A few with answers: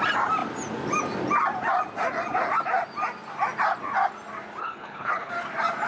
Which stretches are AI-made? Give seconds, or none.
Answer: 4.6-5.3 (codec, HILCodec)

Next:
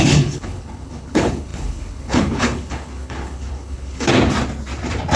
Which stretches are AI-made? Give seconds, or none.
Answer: 0.0-4.1 (codec, HILCodec)

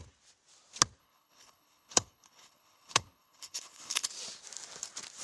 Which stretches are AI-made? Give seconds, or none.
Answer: 1.0-4.1 (codec, HILCodec)

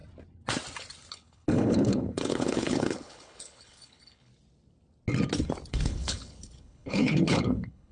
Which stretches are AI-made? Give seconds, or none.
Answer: 1.1-4.3 (codec, HILCodec); 5.7-7.9